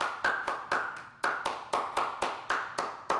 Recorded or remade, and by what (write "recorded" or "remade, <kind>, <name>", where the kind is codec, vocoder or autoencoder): recorded